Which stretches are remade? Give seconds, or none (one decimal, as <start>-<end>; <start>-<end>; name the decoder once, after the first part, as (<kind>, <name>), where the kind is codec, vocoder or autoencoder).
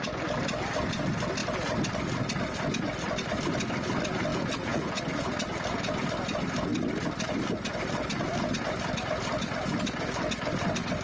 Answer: 4.3-5.0 (vocoder, Vocos)